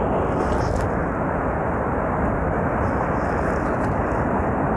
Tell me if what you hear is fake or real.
real